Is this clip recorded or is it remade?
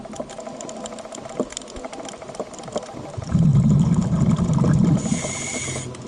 recorded